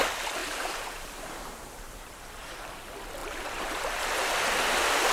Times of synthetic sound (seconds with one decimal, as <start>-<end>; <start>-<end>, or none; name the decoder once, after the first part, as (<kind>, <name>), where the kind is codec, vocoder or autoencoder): 0.4-2.8 (vocoder, BigVGAN v2); 3.2-4.0